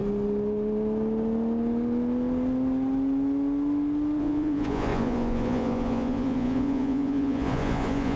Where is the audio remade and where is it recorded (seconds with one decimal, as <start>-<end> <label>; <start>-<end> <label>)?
0.0-4.2 recorded; 4.2-8.2 remade